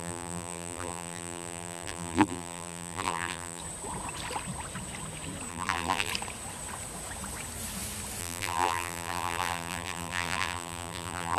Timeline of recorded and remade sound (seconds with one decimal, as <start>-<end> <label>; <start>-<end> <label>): 0.0-3.6 remade; 3.6-5.5 recorded; 5.5-6.1 remade; 6.1-8.2 recorded; 8.2-11.4 remade